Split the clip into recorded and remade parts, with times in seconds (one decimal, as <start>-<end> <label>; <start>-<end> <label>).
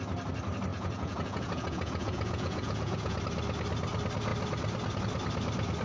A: 0.0-0.7 recorded; 0.7-3.2 remade; 3.2-5.8 recorded